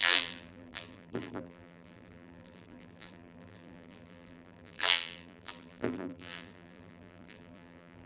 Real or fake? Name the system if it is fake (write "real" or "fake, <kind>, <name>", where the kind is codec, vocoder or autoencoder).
fake, vocoder, BigVGAN v2